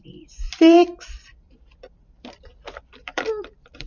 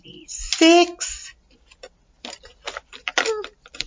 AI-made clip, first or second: first